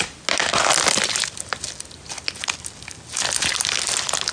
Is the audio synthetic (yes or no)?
no